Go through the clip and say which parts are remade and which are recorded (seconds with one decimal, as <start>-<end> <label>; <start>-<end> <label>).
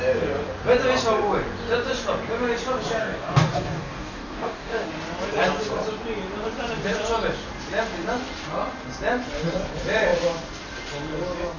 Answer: 0.0-3.0 recorded; 3.0-4.9 remade; 4.9-11.6 recorded